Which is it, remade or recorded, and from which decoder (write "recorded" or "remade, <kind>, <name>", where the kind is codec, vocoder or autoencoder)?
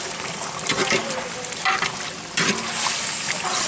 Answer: recorded